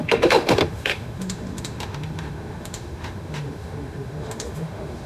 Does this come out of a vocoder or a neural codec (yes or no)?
yes